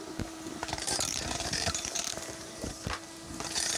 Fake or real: fake